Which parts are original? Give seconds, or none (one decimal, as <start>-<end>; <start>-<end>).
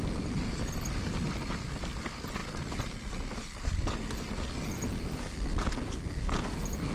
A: 0.0-6.9